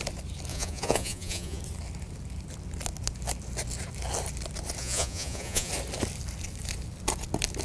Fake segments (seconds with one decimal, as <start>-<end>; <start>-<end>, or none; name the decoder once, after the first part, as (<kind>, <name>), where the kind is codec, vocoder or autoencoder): 0.5-1.6 (vocoder, Vocos); 4.8-5.7